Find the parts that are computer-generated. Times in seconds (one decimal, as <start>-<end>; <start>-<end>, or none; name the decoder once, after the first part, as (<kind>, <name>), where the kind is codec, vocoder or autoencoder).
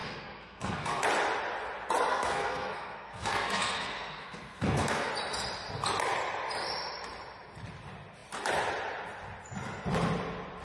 0.0-1.0 (codec, SNAC); 2.1-5.1